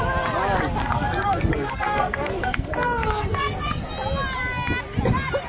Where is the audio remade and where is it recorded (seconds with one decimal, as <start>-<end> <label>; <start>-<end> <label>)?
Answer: 0.0-0.8 recorded; 0.8-3.9 remade; 3.9-5.5 recorded